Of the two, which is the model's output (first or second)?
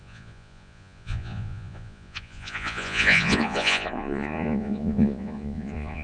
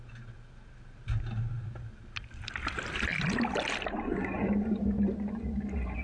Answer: first